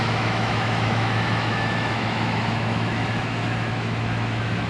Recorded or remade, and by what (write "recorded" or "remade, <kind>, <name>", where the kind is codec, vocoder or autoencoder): remade, autoencoder, DAC-VAE